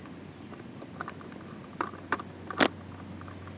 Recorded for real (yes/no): yes